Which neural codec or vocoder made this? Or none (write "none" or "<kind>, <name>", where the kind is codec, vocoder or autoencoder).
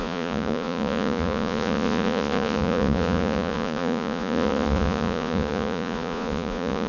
vocoder, Vocos